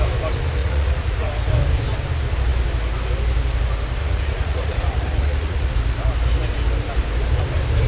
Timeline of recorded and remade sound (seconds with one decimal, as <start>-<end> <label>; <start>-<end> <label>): 0.0-0.6 recorded; 0.6-1.3 remade; 1.3-4.0 recorded; 4.0-5.7 remade; 5.7-7.9 recorded